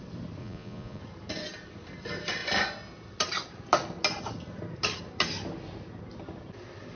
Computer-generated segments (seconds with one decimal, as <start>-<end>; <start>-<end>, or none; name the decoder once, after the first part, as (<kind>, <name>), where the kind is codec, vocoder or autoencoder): 0.4-1.0 (vocoder, Vocos)